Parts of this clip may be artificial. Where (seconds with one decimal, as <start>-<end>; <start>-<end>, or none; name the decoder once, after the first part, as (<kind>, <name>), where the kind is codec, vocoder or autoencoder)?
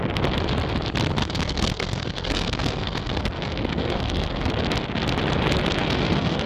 1.2-4.5 (codec, SNAC); 5.8-6.5